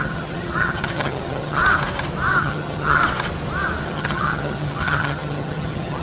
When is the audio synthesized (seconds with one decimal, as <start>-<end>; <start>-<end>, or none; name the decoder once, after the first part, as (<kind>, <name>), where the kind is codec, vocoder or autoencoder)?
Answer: 0.0-1.6 (vocoder, HiFi-GAN); 2.4-3.0; 3.8-6.0